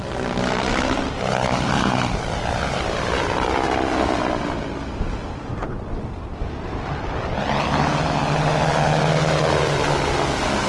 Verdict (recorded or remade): recorded